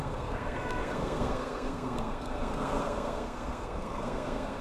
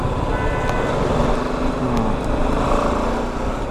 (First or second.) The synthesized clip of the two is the first